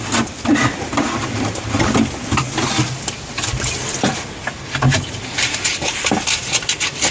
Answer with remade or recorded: recorded